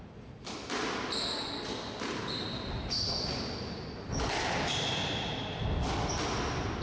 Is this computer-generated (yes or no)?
no